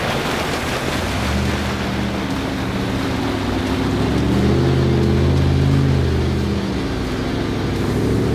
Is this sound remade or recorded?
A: recorded